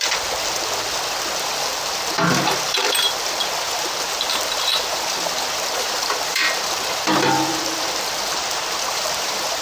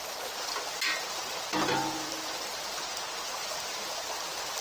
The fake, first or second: first